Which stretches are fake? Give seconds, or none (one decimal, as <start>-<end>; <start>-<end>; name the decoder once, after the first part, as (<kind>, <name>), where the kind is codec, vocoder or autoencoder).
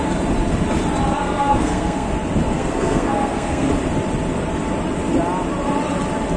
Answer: 1.1-2.1 (codec, SNAC); 2.5-3.7